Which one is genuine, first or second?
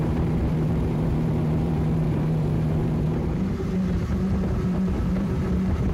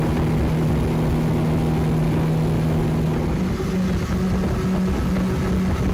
second